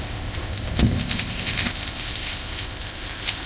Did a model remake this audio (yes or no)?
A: yes